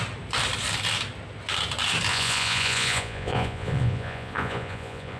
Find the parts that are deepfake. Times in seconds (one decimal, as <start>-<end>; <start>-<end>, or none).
2.1-5.2